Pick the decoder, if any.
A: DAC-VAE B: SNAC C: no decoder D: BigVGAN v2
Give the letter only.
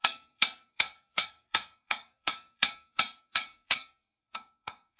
B